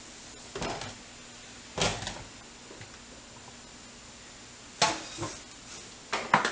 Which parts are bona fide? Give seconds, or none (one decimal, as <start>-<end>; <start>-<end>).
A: 0.0-6.5